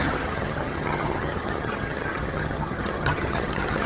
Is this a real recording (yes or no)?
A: no